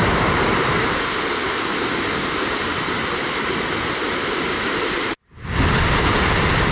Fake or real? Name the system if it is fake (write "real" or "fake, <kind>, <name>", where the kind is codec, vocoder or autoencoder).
fake, vocoder, BigVGAN v2